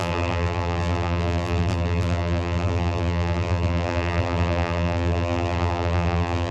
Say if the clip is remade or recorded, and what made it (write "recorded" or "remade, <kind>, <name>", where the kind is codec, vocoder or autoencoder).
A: remade, vocoder, BigVGAN v2